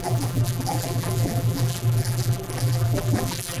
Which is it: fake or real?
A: fake